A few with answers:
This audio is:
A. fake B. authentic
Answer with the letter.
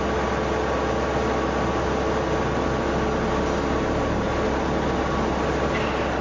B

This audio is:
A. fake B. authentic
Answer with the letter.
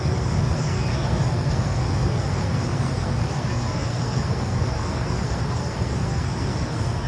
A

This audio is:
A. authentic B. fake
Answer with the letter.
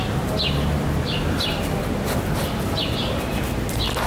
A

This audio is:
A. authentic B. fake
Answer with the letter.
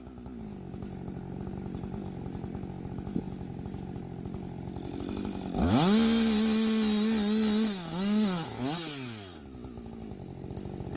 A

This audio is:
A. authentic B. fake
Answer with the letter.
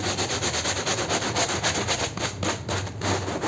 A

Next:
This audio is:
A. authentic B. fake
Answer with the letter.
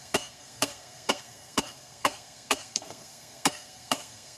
B